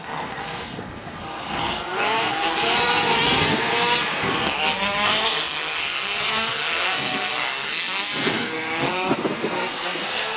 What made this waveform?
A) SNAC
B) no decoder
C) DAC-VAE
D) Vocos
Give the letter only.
A